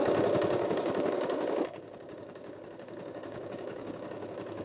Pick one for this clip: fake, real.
fake